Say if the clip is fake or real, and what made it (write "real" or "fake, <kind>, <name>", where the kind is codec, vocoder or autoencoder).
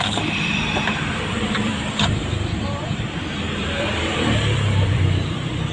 fake, vocoder, BigVGAN v2